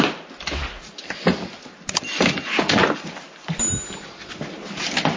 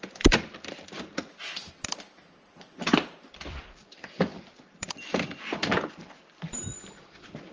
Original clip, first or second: first